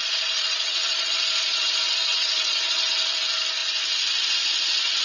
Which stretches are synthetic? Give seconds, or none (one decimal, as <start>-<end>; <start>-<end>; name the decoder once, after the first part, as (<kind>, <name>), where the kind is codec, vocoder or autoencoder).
0.0-3.0 (vocoder, Vocos)

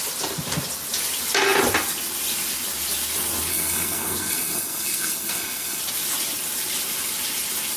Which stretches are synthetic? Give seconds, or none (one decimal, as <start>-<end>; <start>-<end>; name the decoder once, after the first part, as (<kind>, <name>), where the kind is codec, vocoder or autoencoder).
3.5-5.8 (codec, SNAC)

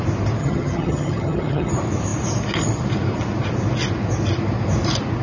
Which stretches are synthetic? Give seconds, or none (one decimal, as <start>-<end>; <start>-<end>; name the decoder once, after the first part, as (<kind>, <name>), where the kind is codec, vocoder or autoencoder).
0.4-1.7 (vocoder, HiFi-GAN)

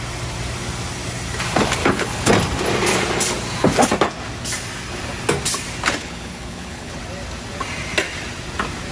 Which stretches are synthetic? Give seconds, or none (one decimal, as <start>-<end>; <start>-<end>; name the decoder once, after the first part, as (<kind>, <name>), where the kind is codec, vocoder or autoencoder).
1.8-2.3 (codec, HILCodec); 6.0-7.0